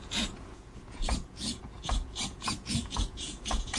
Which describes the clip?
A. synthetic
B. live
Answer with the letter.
A